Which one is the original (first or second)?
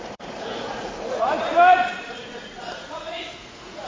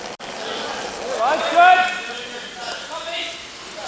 second